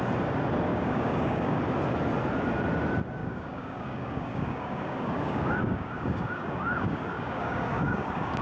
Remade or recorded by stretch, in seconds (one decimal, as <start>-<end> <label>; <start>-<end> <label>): 0.0-0.7 recorded; 0.7-1.6 remade; 1.6-3.2 recorded; 3.2-8.4 remade